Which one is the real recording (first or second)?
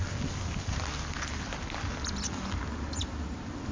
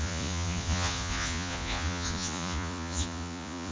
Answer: first